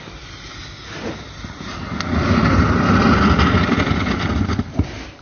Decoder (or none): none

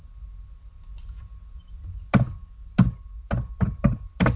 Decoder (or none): none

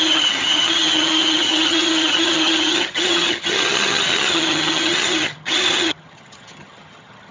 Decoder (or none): vocoder, HiFi-GAN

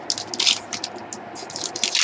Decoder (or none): none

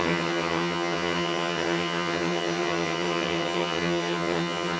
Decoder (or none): vocoder, HiFi-GAN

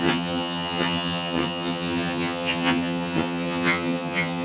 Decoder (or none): vocoder, HiFi-GAN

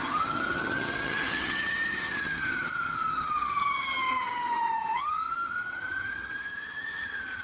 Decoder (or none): vocoder, HiFi-GAN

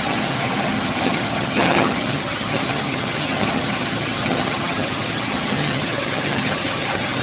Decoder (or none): vocoder, HiFi-GAN